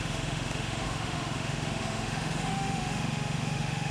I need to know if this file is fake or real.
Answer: fake